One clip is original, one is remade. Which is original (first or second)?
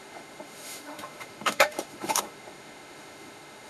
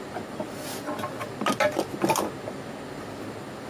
second